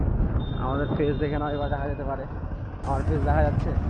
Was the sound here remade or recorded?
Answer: recorded